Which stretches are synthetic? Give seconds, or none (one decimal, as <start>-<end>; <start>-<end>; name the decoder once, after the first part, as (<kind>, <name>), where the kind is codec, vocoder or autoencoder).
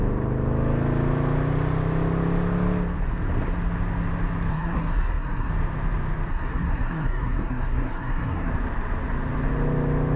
4.5-5.5 (codec, SNAC); 6.3-8.5